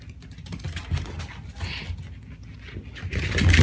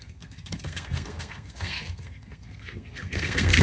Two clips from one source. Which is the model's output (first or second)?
second